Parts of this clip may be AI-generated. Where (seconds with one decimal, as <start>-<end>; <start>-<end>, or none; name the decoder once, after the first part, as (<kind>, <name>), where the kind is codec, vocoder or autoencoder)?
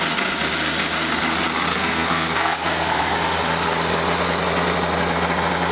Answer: 1.7-3.0 (codec, SNAC)